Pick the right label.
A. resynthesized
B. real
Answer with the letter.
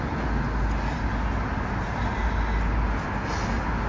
B